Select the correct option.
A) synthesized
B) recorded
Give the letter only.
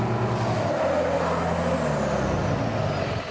B